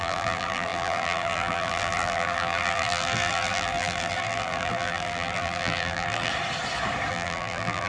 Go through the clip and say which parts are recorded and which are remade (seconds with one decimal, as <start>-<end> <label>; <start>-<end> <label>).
0.0-6.3 remade; 6.3-7.1 recorded; 7.1-7.9 remade